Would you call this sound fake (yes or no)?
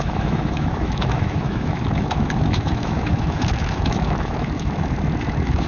yes